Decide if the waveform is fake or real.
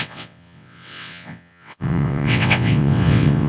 fake